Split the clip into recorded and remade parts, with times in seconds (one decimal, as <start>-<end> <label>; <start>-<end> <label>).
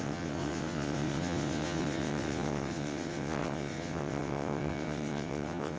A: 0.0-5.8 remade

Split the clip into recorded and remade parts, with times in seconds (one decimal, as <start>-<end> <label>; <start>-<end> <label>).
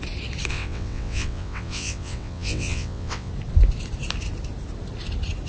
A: 0.0-0.5 recorded; 0.5-3.3 remade; 3.3-5.5 recorded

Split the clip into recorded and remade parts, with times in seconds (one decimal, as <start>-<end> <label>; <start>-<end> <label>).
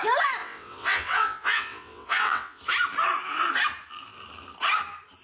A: 0.0-0.4 recorded; 0.4-2.6 remade; 2.6-5.2 recorded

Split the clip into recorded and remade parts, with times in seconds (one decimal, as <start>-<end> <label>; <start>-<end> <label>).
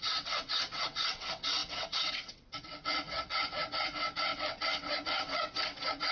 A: 0.0-6.1 remade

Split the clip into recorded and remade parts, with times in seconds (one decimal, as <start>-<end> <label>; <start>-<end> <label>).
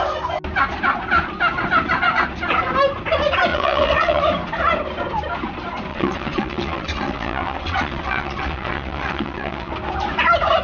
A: 0.0-3.5 recorded; 3.5-4.2 remade; 4.2-5.9 recorded; 5.9-9.7 remade; 9.7-10.6 recorded